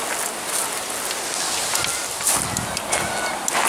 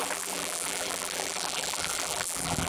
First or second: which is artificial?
second